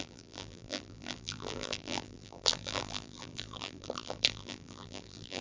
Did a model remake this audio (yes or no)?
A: yes